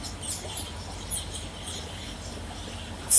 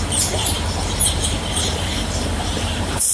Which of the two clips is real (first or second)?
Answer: first